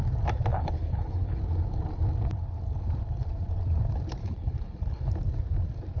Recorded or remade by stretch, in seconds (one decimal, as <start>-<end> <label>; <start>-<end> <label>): 0.0-0.5 recorded; 0.5-1.4 remade; 1.4-4.2 recorded; 4.2-5.1 remade; 5.1-6.0 recorded